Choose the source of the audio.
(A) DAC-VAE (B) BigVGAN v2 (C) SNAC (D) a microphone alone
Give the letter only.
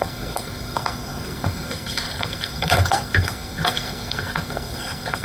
C